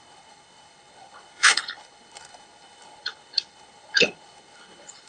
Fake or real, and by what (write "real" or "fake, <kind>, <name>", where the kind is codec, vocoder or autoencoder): fake, codec, HILCodec